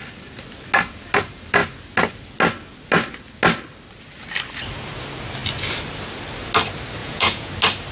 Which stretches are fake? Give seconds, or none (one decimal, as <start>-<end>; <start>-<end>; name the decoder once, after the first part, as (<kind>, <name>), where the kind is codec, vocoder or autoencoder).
7.0-7.5 (vocoder, Vocos)